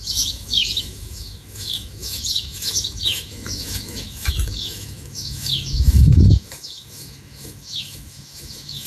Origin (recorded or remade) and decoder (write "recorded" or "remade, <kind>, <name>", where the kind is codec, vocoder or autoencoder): remade, autoencoder, DAC-VAE